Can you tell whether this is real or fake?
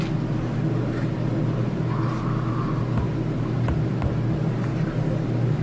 real